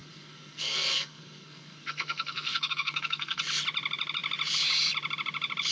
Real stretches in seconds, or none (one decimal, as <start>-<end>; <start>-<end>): 3.4-5.7